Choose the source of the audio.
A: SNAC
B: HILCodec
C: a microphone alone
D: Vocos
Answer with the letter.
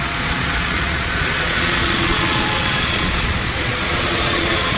D